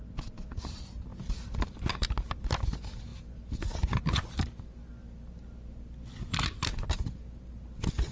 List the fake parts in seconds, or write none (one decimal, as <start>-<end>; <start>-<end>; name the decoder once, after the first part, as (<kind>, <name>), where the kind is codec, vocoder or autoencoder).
none